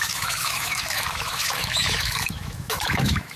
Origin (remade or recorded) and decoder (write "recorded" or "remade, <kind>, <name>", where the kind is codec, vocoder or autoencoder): remade, autoencoder, DAC-VAE